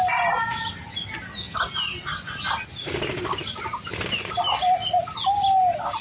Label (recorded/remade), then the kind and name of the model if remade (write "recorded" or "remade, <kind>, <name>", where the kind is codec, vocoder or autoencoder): recorded